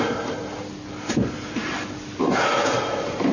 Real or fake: real